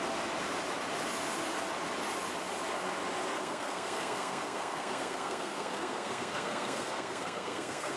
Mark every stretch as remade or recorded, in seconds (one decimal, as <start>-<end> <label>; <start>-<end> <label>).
0.0-3.3 recorded; 3.3-8.0 remade